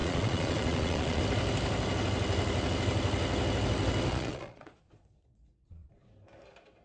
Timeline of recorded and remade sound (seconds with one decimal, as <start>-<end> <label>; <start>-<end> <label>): 0.0-1.2 remade; 1.2-4.1 recorded; 4.1-5.9 remade; 5.9-6.8 recorded